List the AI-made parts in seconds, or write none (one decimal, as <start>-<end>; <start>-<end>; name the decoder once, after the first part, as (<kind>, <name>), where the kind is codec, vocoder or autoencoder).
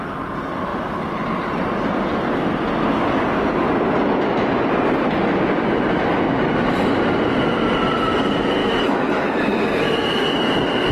8.6-9.4 (autoencoder, DAC-VAE)